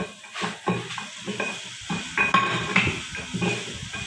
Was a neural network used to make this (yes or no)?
no